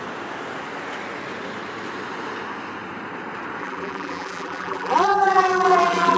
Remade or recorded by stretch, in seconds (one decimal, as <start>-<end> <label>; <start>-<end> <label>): 0.0-3.6 recorded; 3.6-6.2 remade